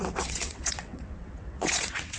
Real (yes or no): no